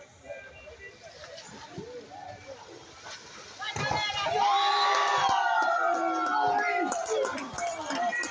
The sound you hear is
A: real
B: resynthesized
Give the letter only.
A